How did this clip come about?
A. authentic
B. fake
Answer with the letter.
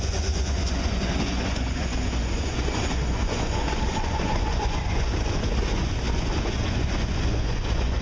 B